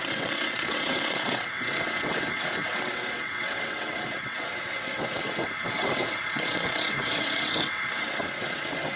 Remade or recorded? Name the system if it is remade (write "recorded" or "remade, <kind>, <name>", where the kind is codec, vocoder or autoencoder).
remade, vocoder, WaveNeXt